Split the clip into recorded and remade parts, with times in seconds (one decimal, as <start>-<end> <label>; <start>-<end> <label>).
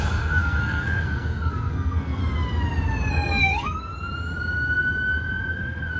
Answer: 0.0-2.2 remade; 2.2-3.1 recorded; 3.1-3.9 remade; 3.9-5.5 recorded; 5.5-6.0 remade